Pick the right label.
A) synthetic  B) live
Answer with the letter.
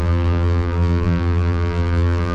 A